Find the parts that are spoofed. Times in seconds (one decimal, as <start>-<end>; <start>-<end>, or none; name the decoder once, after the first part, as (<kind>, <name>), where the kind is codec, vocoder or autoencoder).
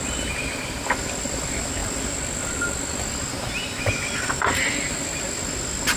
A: none